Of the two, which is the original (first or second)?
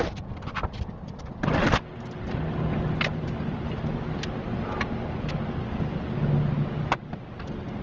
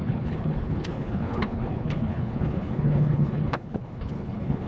first